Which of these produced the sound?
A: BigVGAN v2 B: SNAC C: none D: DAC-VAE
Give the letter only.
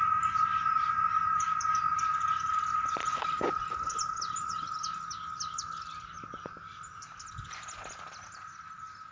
C